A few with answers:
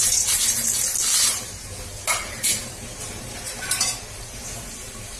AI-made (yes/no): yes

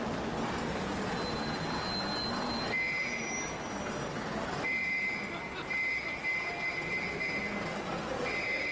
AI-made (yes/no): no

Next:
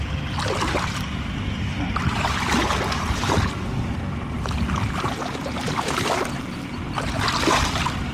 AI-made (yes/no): no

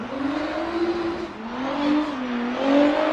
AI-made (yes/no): no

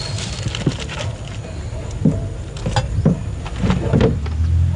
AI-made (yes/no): no